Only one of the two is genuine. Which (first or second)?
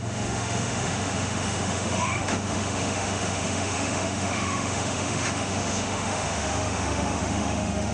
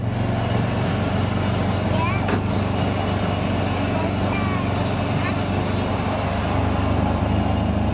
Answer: second